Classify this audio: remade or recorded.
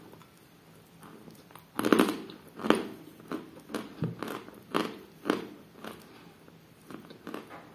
recorded